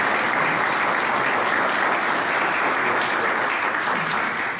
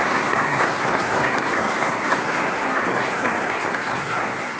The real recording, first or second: first